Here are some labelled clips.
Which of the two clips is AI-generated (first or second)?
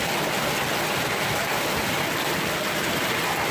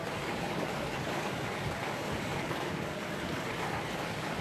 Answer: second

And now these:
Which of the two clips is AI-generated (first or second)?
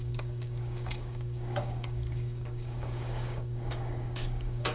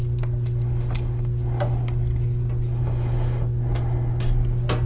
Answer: first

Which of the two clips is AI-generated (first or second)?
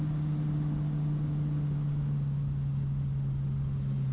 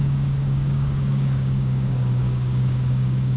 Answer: second